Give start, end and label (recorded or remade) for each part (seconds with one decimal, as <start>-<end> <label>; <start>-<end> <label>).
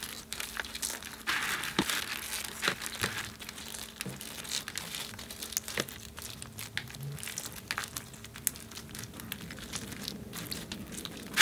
0.0-11.4 recorded